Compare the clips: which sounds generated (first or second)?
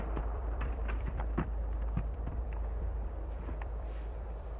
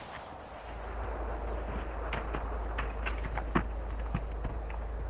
first